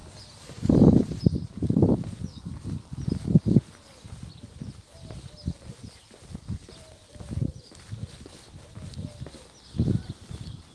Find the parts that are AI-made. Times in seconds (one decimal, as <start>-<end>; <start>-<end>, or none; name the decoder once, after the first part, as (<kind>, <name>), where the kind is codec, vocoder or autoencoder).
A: 8.0-8.7 (codec, HILCodec)